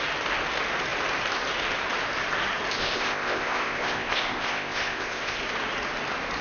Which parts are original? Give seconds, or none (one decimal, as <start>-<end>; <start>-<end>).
0.0-2.8; 5.4-6.4